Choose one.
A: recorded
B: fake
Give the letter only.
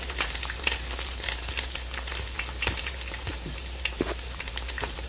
B